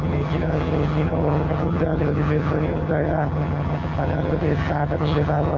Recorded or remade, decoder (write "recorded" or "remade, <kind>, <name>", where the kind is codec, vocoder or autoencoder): remade, vocoder, HiFi-GAN